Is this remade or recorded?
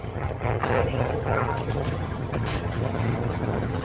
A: remade